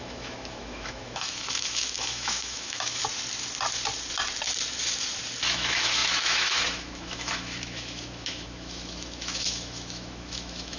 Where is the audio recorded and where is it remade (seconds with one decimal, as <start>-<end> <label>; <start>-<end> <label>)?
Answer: 0.0-3.0 remade; 3.0-5.4 recorded; 5.4-10.8 remade